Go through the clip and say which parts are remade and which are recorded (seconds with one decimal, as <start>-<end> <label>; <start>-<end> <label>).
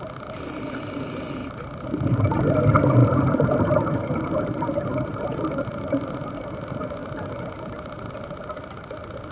0.0-1.4 recorded; 1.4-2.4 remade; 2.4-3.0 recorded; 3.0-5.8 remade; 5.8-7.0 recorded; 7.0-8.1 remade; 8.1-9.3 recorded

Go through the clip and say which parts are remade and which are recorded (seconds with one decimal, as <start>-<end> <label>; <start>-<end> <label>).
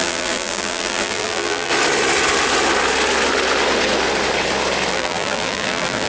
0.0-1.7 remade; 1.7-4.9 recorded; 4.9-6.1 remade